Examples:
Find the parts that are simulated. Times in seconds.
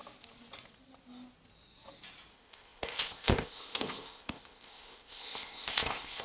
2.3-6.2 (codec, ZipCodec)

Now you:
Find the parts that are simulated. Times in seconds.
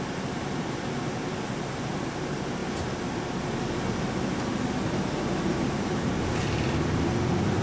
none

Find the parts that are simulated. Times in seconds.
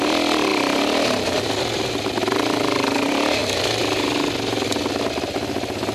none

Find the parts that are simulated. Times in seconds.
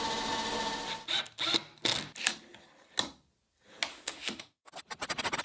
3.9-4.7 (autoencoder, DAC-VAE)